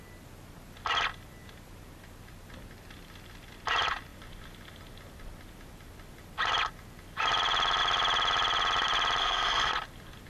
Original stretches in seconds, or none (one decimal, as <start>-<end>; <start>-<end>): 0.0-9.2; 9.7-10.3